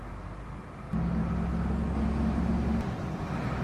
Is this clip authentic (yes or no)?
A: yes